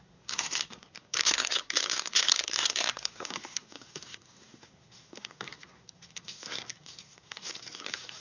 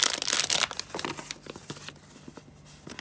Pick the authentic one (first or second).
second